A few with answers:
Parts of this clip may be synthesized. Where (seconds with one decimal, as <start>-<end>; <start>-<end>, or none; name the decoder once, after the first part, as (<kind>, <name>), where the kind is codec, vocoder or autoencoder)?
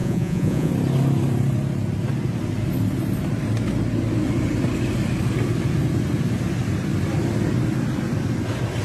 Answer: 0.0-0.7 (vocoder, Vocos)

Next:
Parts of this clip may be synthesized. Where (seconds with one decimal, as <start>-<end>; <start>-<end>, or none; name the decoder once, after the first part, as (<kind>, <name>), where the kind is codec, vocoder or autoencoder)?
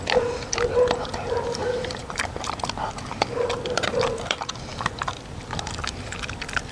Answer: 0.0-6.7 (vocoder, BigVGAN v2)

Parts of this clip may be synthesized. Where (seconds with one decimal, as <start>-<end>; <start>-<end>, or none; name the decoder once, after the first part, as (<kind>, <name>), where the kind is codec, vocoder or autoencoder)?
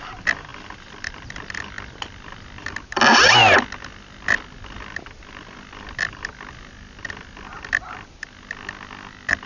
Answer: none